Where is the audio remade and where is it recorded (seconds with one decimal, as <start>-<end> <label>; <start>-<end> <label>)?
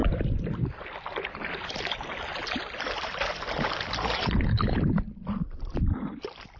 0.0-6.6 recorded